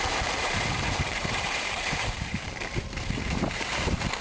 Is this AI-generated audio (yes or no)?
yes